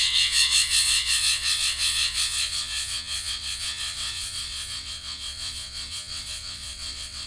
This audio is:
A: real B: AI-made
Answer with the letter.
B